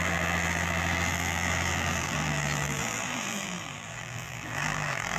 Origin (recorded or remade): remade